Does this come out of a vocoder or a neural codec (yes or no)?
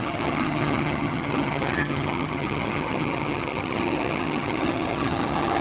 yes